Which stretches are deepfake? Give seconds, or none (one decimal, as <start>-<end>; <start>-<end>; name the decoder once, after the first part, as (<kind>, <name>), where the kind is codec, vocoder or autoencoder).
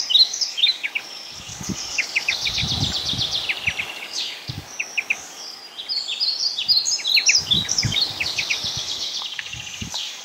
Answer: 0.0-2.6 (codec, DAC); 3.8-5.6; 7.4-10.2